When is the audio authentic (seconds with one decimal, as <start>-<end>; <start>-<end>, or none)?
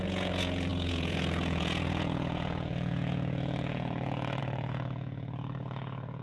none